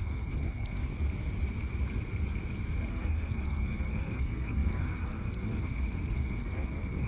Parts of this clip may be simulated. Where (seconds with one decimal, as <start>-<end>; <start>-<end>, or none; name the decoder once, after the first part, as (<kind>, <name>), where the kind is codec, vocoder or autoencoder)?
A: 0.0-0.9 (codec, SNAC); 2.9-7.1